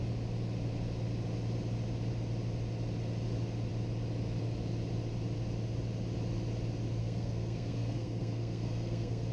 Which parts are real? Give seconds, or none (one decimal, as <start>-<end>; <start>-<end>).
0.0-7.0